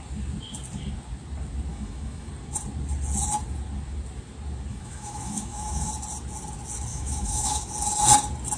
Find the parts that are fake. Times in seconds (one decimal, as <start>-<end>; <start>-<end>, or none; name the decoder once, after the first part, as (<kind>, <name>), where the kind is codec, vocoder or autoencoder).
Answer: 1.7-2.3 (autoencoder, DAC-VAE); 4.7-5.9; 6.9-7.7